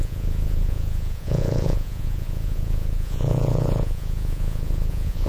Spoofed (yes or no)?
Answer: yes